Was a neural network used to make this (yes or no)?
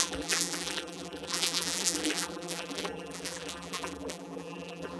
yes